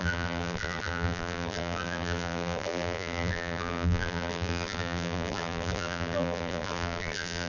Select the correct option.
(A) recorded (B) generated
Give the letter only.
B